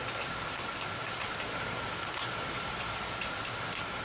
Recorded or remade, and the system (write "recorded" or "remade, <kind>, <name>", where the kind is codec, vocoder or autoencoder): recorded